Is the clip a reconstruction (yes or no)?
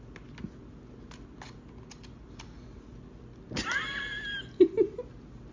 no